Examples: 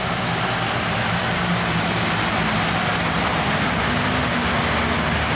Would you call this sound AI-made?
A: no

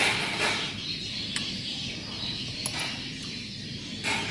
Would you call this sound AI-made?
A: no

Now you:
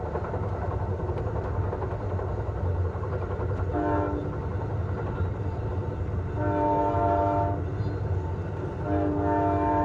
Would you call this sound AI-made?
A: no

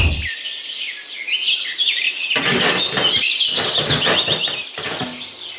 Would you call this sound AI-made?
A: no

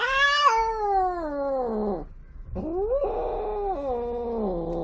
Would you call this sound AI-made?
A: no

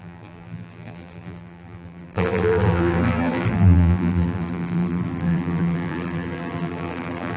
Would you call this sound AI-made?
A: yes